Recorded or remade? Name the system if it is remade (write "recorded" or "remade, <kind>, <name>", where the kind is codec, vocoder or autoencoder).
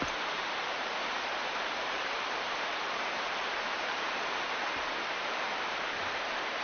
remade, vocoder, BigVGAN v2